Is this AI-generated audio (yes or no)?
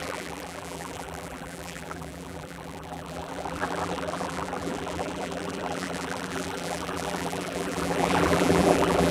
yes